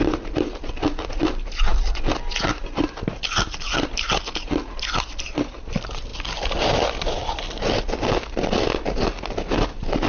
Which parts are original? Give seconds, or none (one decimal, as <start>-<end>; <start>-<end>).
0.0-10.1